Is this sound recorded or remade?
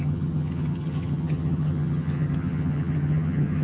remade